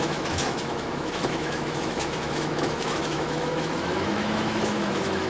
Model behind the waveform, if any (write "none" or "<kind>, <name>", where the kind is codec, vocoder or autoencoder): autoencoder, DAC-VAE